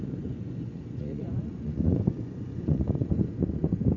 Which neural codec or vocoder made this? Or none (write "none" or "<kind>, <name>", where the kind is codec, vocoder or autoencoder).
vocoder, Vocos